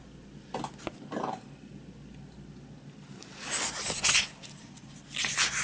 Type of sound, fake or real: real